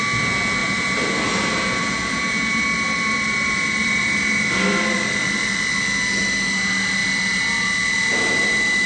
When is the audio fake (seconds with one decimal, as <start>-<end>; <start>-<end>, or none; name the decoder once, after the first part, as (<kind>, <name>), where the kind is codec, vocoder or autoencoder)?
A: 0.6-5.6 (vocoder, BigVGAN v2)